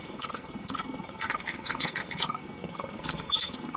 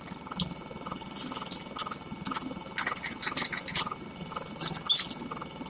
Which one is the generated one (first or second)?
first